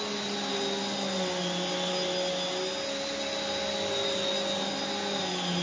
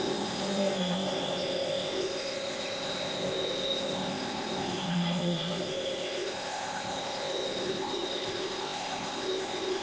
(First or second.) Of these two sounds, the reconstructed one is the second